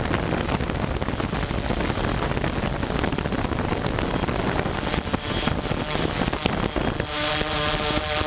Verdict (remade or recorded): recorded